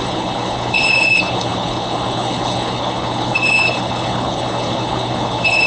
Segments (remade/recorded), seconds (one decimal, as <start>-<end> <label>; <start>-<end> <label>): 0.0-5.7 remade